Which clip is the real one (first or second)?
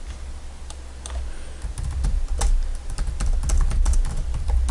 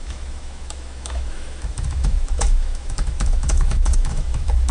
first